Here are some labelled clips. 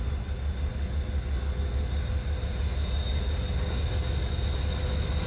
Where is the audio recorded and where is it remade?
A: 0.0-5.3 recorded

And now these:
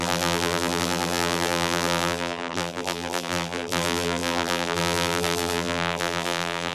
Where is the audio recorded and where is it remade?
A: 0.0-6.7 remade